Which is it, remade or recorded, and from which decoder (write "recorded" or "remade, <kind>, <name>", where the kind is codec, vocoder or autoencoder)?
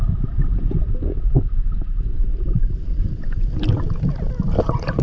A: recorded